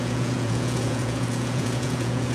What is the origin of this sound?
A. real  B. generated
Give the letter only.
B